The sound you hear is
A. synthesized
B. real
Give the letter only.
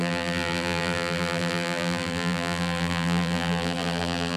A